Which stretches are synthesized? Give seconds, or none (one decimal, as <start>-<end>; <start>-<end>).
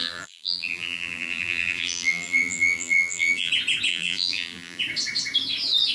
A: 0.0-3.5; 3.9-4.8